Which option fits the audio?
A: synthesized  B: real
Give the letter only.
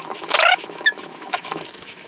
A